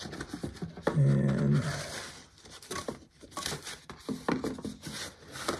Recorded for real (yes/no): yes